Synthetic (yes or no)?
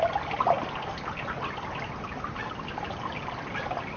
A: no